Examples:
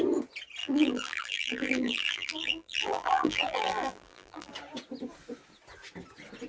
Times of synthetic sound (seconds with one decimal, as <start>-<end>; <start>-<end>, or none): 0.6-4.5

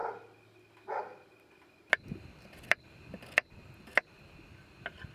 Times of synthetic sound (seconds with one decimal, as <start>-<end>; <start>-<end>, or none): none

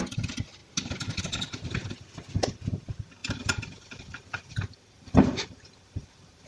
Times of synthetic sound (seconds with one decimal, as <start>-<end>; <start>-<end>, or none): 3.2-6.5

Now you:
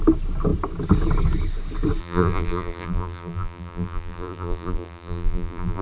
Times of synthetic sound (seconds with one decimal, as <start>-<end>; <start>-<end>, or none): 2.0-5.8

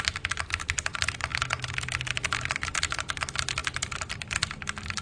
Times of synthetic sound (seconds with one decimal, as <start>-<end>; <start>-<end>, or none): none

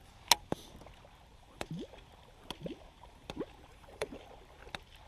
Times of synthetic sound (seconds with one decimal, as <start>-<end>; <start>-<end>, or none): 3.7-4.2

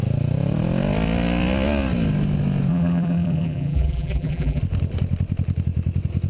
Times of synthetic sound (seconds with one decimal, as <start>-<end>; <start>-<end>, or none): 2.7-4.6

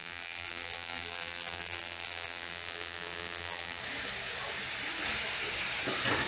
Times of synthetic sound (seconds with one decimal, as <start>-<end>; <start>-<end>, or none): 0.0-3.8